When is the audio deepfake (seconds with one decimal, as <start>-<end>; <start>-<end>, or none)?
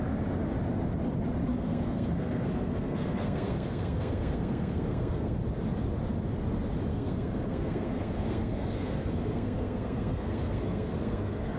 1.5-5.4; 6.9-11.6